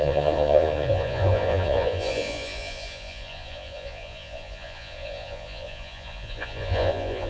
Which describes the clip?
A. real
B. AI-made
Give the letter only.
B